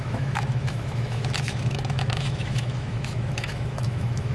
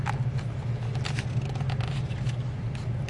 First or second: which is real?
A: second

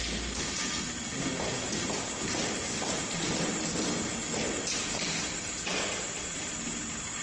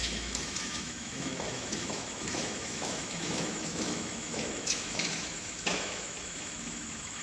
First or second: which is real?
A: first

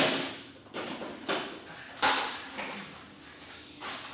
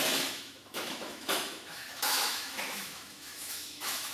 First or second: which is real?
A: first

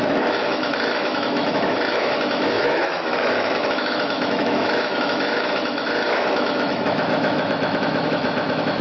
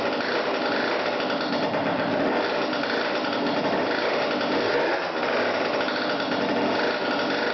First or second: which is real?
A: second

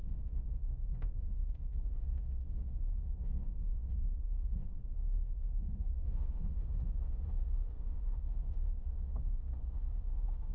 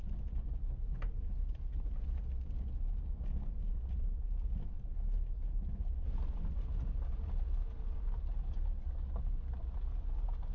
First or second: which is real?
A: second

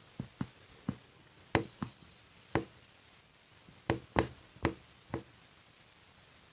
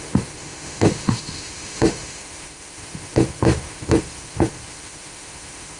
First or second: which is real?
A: first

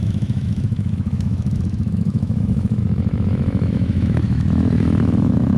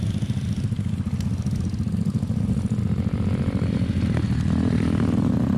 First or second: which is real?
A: second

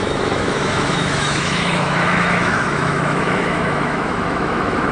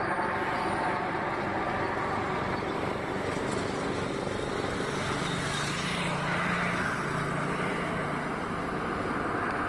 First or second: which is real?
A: second